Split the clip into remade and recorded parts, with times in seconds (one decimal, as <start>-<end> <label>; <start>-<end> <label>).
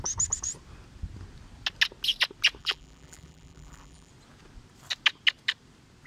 0.0-2.6 recorded; 2.6-4.1 remade; 4.1-6.1 recorded